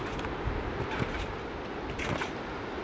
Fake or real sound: real